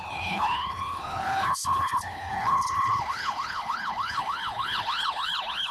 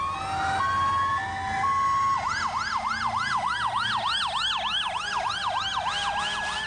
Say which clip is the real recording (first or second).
second